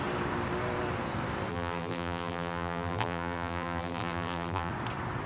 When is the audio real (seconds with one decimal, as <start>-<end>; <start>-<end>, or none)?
0.0-1.5; 4.7-5.3